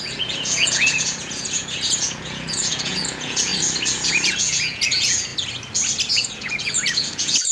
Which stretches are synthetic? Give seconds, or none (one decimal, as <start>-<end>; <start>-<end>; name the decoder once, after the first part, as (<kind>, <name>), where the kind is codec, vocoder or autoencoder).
0.0-3.5 (vocoder, Vocos); 4.1-5.3; 6.1-7.5